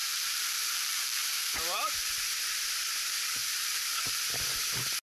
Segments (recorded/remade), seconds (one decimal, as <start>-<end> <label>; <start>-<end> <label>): 0.0-2.6 remade; 2.6-3.4 recorded; 3.4-4.2 remade; 4.2-5.1 recorded